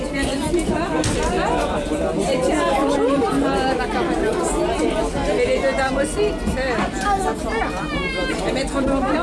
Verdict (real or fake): real